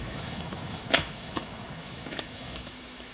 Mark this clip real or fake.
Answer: fake